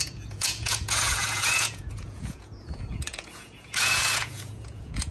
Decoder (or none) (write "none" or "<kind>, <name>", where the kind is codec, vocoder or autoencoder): vocoder, Vocos